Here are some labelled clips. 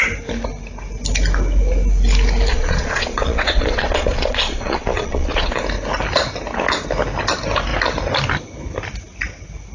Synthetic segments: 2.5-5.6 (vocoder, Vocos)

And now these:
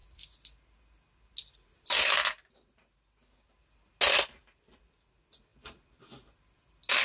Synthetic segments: none

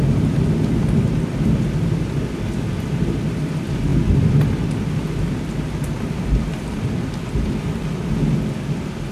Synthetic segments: none

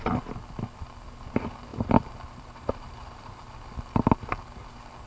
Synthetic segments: 1.7-3.4 (vocoder, BigVGAN v2)

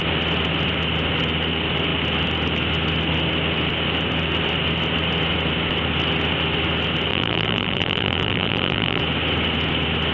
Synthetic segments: 7.1-9.0 (vocoder, BigVGAN v2)

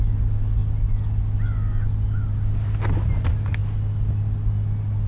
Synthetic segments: none